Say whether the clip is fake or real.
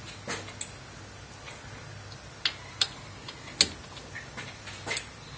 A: real